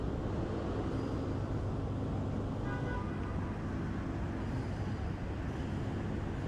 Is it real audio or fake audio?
real